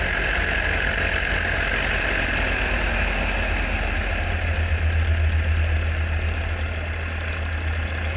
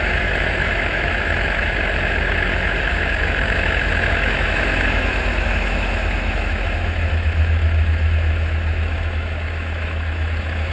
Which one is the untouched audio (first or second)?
first